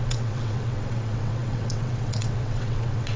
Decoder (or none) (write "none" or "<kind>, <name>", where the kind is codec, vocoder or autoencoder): vocoder, WaveNeXt